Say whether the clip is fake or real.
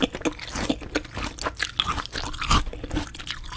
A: real